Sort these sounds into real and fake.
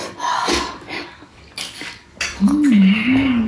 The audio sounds fake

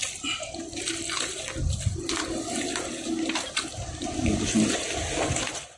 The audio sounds real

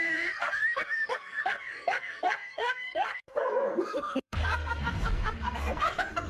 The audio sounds fake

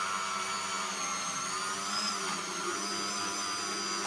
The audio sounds real